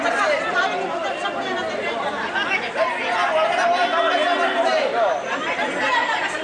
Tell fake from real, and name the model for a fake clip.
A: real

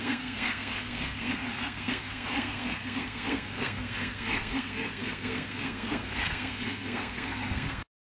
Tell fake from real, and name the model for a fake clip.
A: fake, codec, SNAC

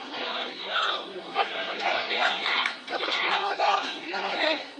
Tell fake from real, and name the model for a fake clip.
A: fake, codec, SNAC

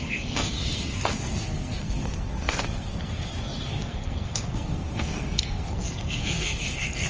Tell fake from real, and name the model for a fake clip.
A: fake, codec, SNAC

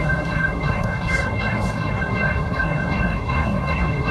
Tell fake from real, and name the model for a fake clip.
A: fake, codec, SNAC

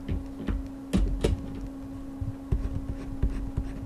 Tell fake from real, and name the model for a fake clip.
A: real